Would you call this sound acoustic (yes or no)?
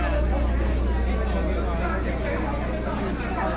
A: yes